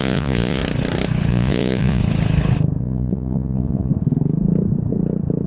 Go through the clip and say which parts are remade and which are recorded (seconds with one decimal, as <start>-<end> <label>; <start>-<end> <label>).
0.0-0.6 remade; 0.6-1.3 recorded; 1.3-2.0 remade; 2.0-2.8 recorded; 2.8-3.9 remade; 3.9-5.5 recorded